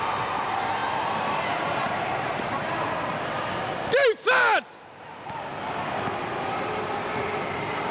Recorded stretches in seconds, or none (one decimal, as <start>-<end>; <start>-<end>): 0.0-7.9